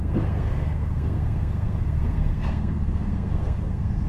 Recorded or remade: remade